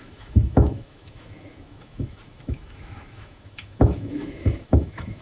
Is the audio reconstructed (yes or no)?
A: yes